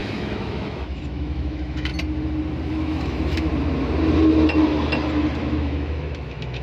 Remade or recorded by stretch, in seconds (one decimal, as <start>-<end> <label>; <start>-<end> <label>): 0.0-1.9 remade; 1.9-2.7 recorded; 2.7-3.5 remade; 3.5-5.4 recorded; 5.4-6.6 remade